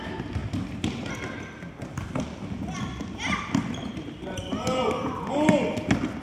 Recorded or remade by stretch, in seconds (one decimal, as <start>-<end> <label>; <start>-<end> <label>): 0.0-6.2 recorded